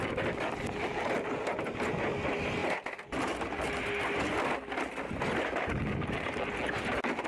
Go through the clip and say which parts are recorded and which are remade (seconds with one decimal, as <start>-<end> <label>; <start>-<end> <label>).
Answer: 0.0-7.3 recorded